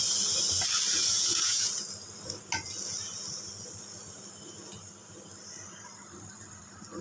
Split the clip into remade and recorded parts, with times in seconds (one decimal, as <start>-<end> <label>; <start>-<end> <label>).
0.0-1.0 recorded; 1.0-1.7 remade; 1.7-7.0 recorded